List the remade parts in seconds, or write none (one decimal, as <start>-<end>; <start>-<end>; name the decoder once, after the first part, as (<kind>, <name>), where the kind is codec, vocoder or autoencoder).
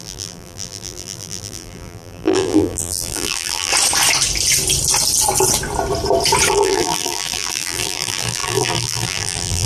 0.0-3.7 (vocoder, BigVGAN v2); 6.5-9.7